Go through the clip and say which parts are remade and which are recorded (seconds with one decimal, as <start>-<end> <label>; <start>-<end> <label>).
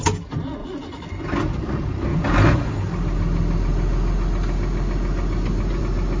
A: 0.0-0.6 recorded; 0.6-1.1 remade; 1.1-6.2 recorded